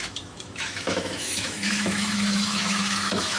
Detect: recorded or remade remade